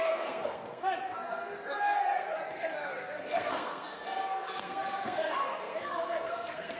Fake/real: fake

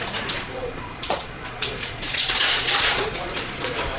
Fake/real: fake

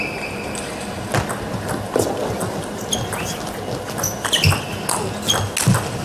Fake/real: real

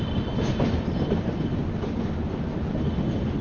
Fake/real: real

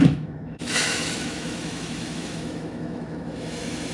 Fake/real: fake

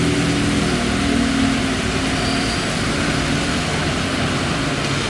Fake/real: real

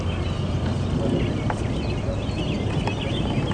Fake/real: real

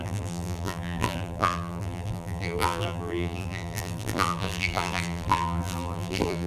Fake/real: fake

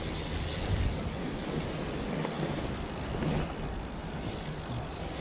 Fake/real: real